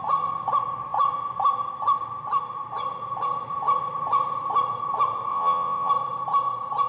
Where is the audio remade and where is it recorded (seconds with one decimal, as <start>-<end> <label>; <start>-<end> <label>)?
0.0-5.3 recorded; 5.3-5.9 remade; 5.9-6.9 recorded